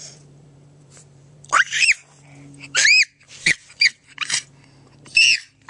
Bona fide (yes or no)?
no